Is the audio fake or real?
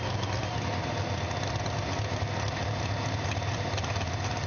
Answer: real